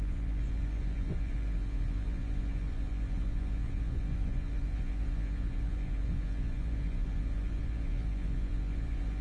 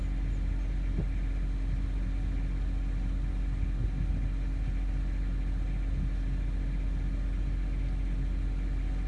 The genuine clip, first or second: second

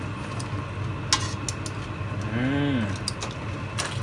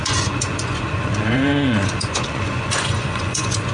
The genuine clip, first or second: first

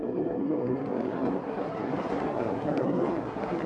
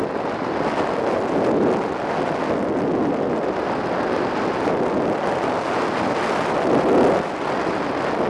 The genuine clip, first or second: second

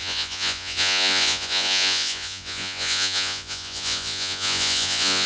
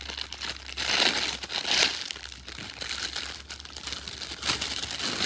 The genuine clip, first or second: second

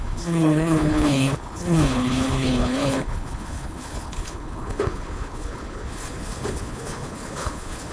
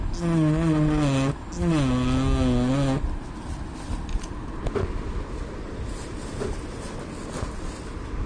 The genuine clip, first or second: second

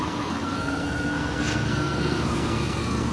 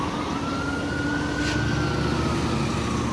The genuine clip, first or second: second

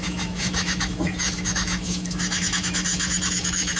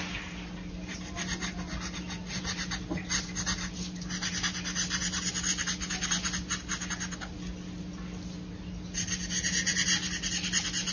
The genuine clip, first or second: second